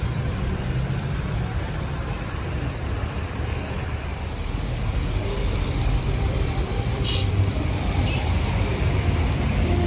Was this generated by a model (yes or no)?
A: yes